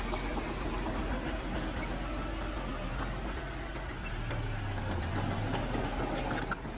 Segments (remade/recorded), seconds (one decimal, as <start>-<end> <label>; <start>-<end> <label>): 0.0-6.8 recorded